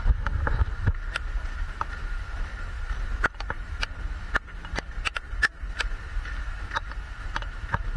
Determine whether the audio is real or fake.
real